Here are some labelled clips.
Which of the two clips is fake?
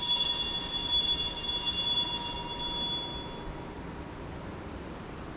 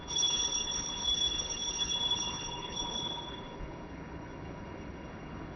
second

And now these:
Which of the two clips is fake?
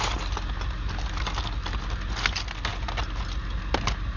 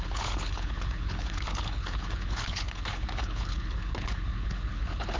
second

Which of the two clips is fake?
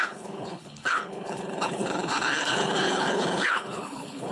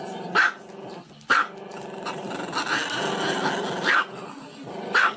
first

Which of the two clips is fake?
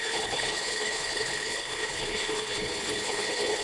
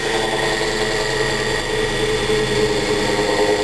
first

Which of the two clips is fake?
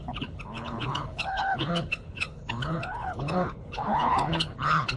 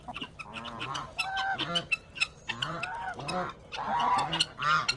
first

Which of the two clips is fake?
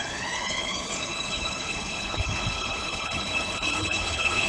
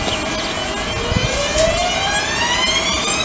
first